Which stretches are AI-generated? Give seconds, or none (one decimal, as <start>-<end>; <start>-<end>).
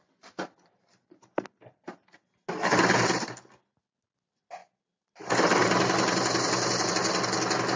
none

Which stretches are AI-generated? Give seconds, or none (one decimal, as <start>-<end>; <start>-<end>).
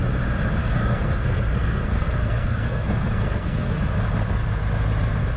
0.6-3.8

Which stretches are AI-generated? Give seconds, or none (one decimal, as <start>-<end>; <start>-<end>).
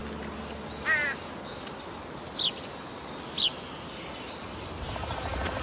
none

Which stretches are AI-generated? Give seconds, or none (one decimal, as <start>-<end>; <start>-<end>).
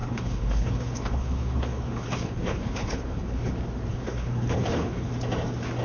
0.0-3.5; 3.9-5.1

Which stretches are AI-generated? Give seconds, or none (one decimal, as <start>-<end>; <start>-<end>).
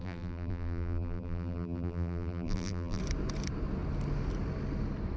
0.0-3.0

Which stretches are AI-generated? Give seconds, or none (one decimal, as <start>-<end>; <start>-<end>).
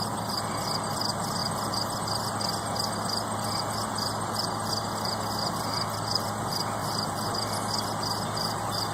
6.8-7.3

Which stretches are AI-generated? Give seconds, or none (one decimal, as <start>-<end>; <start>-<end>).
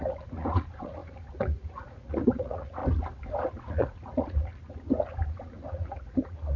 0.0-2.8; 3.6-4.5; 5.3-6.6